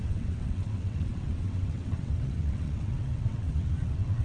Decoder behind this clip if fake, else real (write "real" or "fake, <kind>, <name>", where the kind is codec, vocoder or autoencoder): fake, vocoder, WaveNeXt